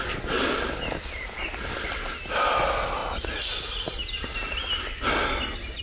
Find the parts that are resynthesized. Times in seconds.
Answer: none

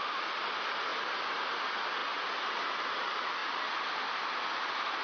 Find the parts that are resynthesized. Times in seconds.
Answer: none

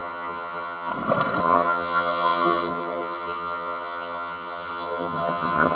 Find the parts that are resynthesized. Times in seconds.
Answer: 0.0-0.9 (vocoder, HiFi-GAN); 1.4-5.8

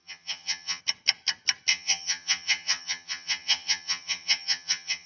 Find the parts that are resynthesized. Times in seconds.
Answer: 0.0-0.8 (vocoder, HiFi-GAN); 1.7-5.1

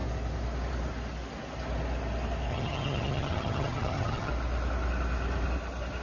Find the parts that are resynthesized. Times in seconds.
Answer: 2.5-4.3 (vocoder, HiFi-GAN)

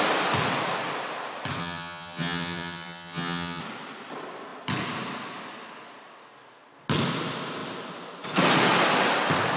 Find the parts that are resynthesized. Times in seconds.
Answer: 1.6-3.6 (vocoder, HiFi-GAN)